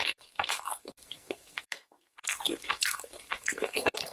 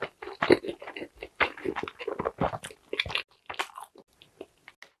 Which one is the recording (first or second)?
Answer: second